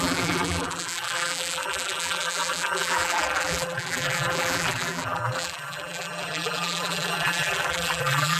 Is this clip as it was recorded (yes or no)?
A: no